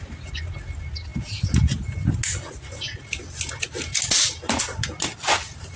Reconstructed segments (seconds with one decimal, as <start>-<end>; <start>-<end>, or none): none